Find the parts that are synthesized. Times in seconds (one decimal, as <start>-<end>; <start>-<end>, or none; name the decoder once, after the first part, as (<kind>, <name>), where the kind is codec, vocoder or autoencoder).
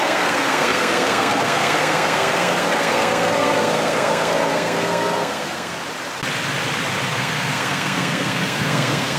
0.0-5.8 (codec, SNAC); 7.1-9.2